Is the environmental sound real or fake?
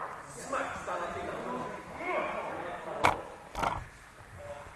real